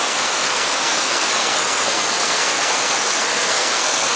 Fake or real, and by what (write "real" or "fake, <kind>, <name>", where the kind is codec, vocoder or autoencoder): fake, codec, SNAC